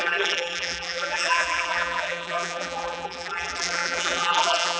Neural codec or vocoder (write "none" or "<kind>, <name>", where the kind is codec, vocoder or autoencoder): vocoder, BigVGAN v2